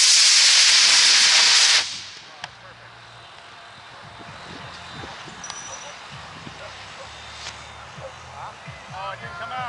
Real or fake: real